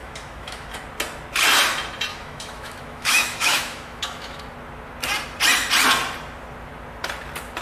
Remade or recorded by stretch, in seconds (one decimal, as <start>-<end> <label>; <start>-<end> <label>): 0.0-0.7 remade; 0.7-2.1 recorded; 2.1-4.4 remade; 4.4-7.6 recorded